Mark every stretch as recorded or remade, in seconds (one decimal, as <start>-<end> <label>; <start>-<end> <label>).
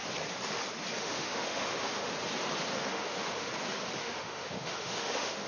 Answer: 0.0-1.0 recorded; 1.0-2.1 remade; 2.1-2.9 recorded; 2.9-3.5 remade; 3.5-4.0 recorded; 4.0-5.5 remade